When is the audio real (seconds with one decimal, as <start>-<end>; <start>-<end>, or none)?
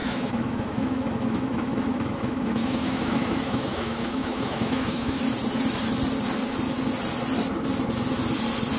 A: 5.2-8.8